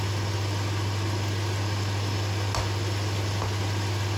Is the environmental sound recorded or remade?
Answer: recorded